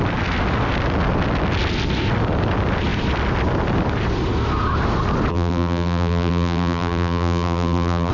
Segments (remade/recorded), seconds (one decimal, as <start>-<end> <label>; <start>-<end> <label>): 0.0-5.3 recorded; 5.3-8.1 remade